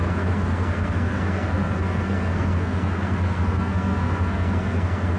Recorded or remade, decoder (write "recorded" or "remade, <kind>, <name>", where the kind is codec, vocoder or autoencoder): remade, codec, SNAC